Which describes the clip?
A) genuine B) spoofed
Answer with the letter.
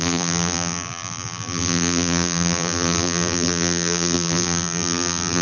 B